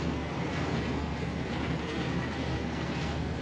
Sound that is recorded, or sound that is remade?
remade